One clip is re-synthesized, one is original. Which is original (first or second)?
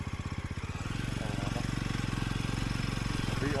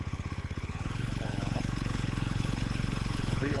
first